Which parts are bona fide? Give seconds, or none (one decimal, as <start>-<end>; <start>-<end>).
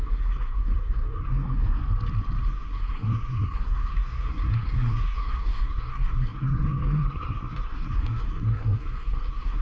1.8-2.4